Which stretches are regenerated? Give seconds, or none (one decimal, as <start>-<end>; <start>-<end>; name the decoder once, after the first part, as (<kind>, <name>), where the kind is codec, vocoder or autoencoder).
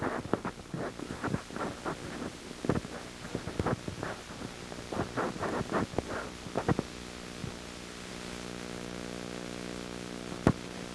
none